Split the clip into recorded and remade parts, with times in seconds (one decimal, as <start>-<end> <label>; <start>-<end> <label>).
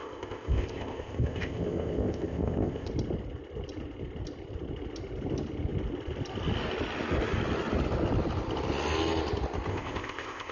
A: 0.0-2.9 remade; 2.9-9.7 recorded; 9.7-10.5 remade